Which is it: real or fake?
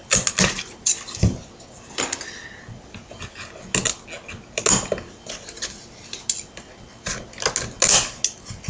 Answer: real